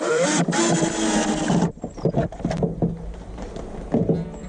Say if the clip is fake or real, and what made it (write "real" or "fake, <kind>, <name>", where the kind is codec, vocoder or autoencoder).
real